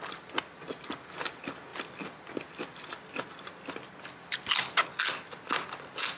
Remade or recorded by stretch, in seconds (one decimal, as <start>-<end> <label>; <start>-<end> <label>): 0.0-6.2 recorded